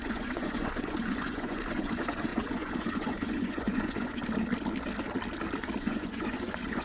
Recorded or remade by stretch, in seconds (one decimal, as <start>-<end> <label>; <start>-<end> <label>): 0.0-4.2 remade; 4.2-5.8 recorded; 5.8-6.8 remade